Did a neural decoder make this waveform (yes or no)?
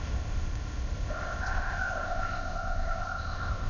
yes